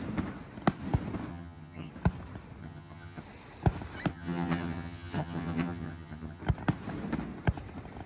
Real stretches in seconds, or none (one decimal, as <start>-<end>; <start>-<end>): 0.0-1.3; 1.9-2.6; 3.2-4.1; 6.4-8.1

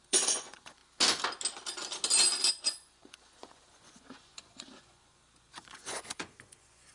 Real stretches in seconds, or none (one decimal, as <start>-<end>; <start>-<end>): 0.8-2.5

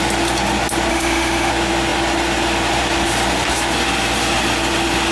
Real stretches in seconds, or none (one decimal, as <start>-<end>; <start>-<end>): 0.0-0.9; 1.5-5.1

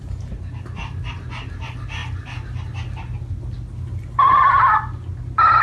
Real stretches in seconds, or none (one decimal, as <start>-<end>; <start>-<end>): 0.0-5.6

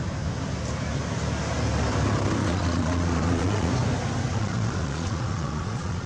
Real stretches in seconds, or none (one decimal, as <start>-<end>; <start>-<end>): 0.0-2.4; 3.7-4.3

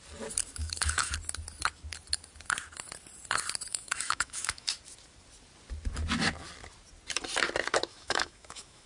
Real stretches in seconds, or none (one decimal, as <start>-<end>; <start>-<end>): 0.0-0.6; 1.1-3.7; 4.7-7.9

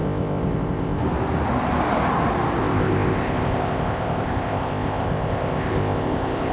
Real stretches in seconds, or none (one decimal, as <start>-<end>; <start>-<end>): 1.0-2.6

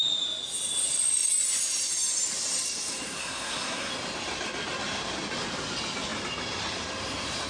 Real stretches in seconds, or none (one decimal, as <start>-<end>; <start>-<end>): 0.0-3.2; 3.9-7.5